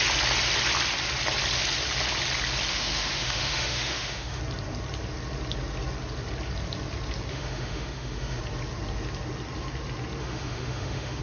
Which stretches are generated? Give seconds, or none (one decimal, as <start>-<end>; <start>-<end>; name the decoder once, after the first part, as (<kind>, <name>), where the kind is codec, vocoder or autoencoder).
2.7-4.4 (autoencoder, DAC-VAE); 7.3-8.4; 10.2-11.2